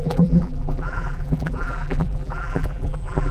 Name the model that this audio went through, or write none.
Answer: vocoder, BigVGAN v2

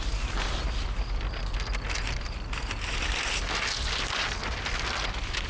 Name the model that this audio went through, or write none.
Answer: none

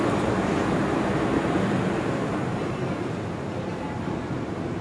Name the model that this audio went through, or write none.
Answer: vocoder, BigVGAN v2